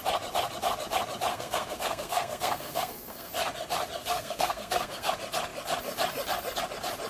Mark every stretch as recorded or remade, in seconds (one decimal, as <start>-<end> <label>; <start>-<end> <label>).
0.0-1.3 recorded; 1.3-3.3 remade; 3.3-4.0 recorded; 4.0-5.1 remade; 5.1-7.1 recorded